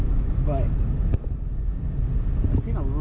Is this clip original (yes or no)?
yes